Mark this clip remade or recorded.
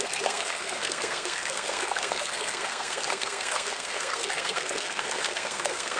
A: remade